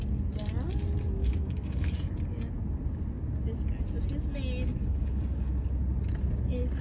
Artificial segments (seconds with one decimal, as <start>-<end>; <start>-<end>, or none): 1.2-2.1; 4.8-5.5